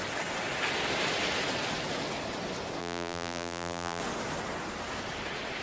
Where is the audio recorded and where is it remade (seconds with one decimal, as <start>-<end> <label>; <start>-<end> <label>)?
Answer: 0.0-2.8 recorded; 2.8-4.0 remade; 4.0-5.6 recorded